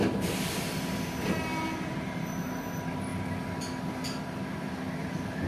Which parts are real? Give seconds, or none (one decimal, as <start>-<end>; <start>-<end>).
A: 0.0-1.5; 2.7-5.5